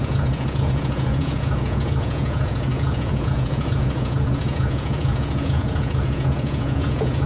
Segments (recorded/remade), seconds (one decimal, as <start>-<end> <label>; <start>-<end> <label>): 0.0-7.3 remade